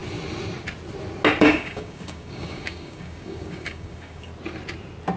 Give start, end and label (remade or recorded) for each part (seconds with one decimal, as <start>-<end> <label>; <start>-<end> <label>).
0.0-1.4 recorded; 1.4-4.3 remade; 4.3-5.2 recorded